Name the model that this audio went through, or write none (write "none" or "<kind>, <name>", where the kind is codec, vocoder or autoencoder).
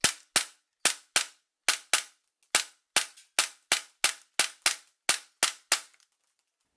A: none